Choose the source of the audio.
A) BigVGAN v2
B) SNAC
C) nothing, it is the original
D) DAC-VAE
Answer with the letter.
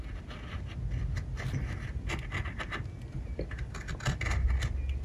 C